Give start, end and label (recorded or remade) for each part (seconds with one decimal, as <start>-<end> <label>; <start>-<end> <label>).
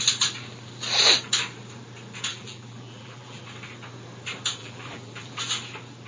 0.0-2.3 recorded; 2.3-3.4 remade; 3.4-4.6 recorded; 4.6-5.4 remade; 5.4-6.1 recorded